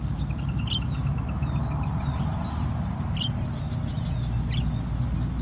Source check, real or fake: real